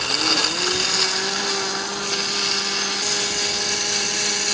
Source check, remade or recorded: recorded